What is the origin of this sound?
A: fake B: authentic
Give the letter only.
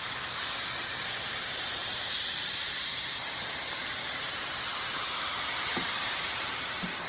A